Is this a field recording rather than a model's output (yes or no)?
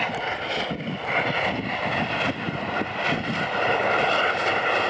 yes